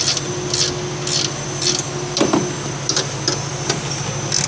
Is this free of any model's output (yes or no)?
yes